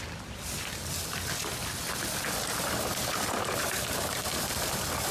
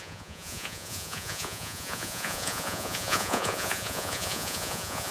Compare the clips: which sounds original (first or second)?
first